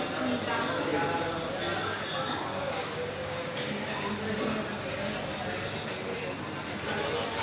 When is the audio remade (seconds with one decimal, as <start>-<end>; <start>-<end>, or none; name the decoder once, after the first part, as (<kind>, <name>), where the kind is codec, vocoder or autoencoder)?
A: 2.5-4.1 (codec, DAC)